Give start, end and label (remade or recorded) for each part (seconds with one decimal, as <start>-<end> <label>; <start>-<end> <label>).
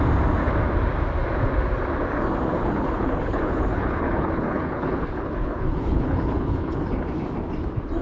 0.0-2.5 recorded; 2.5-6.9 remade; 6.9-8.0 recorded